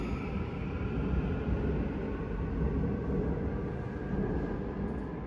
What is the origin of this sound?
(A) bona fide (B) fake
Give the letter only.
A